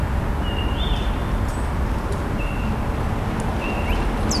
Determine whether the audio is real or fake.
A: real